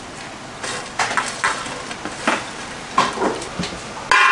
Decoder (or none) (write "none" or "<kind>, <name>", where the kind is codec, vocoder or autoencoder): none